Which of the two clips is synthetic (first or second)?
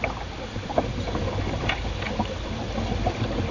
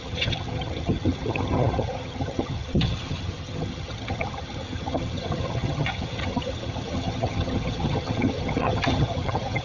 second